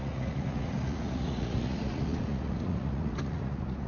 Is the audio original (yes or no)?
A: no